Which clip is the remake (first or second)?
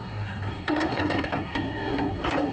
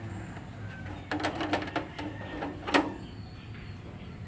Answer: first